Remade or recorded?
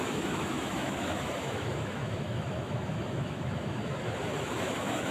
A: remade